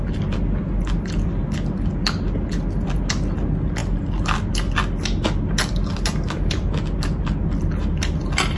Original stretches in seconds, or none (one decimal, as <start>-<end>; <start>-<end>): 0.0-8.6